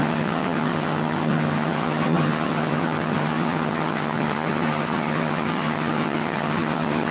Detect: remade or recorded remade